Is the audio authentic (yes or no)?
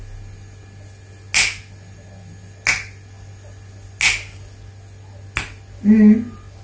yes